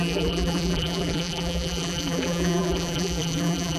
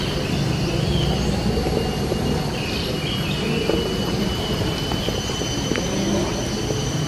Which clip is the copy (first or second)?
first